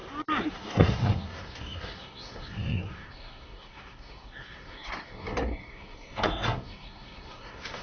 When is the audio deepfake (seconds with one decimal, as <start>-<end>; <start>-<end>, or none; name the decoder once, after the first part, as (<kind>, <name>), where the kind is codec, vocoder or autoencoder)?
0.5-7.8 (codec, SNAC)